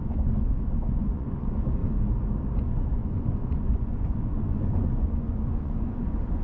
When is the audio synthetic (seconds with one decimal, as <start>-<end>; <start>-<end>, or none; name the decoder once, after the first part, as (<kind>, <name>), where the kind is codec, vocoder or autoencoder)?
0.0-1.8 (vocoder, Vocos); 2.6-6.4